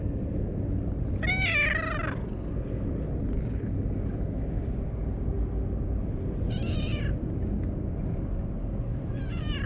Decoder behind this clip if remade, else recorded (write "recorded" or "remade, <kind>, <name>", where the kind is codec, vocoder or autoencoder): recorded